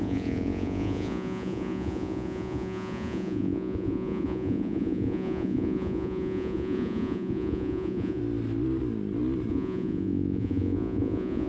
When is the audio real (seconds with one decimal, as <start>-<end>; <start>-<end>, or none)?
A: 8.2-9.5